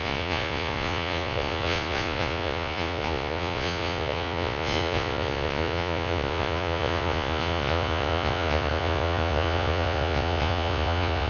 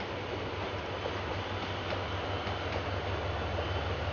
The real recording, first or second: second